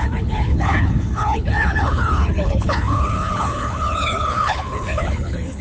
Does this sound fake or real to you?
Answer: fake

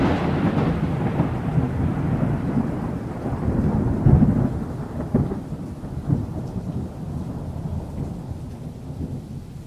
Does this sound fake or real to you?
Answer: real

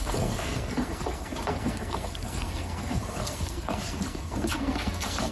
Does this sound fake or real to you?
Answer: fake